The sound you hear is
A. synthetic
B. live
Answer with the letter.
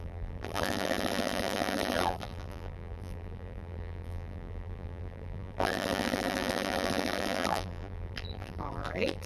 A